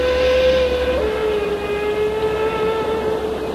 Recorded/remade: recorded